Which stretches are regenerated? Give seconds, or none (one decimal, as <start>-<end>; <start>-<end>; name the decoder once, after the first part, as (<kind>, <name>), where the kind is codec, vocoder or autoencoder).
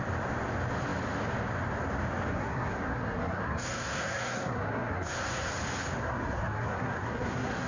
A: 2.3-5.5 (codec, SNAC); 6.0-7.7